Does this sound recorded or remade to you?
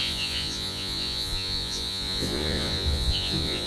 remade